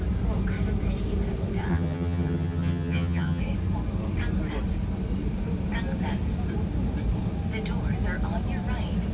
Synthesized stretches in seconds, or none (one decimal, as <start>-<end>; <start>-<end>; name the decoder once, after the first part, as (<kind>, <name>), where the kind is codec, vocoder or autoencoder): 1.7-3.4 (vocoder, HiFi-GAN)